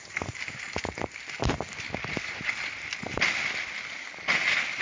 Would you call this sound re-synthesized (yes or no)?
no